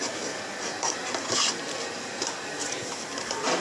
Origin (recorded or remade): remade